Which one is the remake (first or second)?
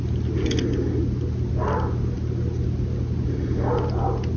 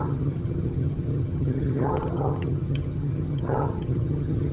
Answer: second